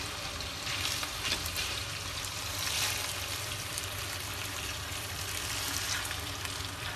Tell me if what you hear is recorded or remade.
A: remade